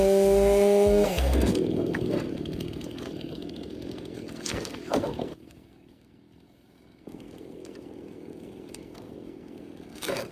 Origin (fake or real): fake